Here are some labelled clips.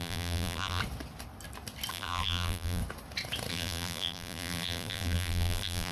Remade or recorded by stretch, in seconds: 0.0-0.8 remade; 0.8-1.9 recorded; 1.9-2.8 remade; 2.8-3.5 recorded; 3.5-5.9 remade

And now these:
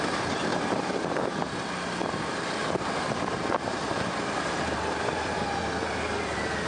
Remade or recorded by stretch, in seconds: 0.0-6.7 remade